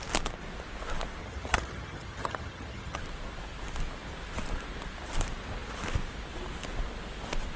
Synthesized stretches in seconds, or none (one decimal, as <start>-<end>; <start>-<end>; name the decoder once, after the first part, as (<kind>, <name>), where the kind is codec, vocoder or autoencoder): 1.2-3.0 (vocoder, HiFi-GAN)

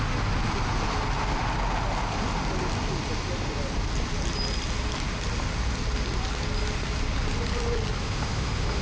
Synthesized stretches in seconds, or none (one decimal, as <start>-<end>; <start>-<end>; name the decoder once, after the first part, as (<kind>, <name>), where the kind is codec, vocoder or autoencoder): 8.0-8.8 (autoencoder, DAC-VAE)

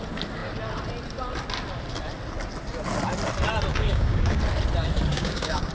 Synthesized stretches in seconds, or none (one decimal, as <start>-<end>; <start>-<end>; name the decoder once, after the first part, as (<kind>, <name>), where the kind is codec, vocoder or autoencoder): 3.7-4.4 (codec, DAC); 5.1-5.7

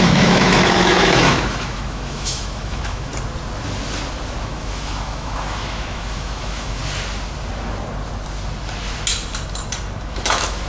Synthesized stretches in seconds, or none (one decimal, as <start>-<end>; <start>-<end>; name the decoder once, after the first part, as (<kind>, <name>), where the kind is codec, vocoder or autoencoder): 0.0-3.1 (autoencoder, DAC-VAE); 4.4-6.8; 10.0-10.7

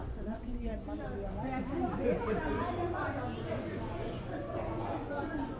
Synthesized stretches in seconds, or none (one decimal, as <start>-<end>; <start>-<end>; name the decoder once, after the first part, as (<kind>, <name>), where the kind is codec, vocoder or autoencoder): 0.0-0.7 (vocoder, Vocos); 3.4-5.6